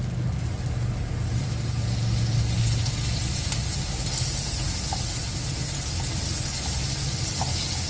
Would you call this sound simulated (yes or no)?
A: no